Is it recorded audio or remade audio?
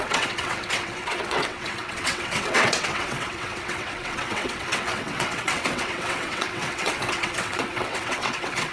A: remade